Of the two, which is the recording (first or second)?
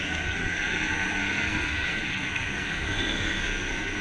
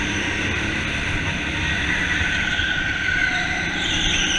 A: second